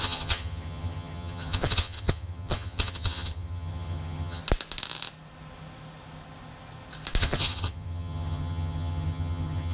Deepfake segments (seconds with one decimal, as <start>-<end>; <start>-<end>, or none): 0.0-4.4; 7.2-9.7